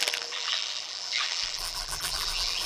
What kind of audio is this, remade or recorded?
remade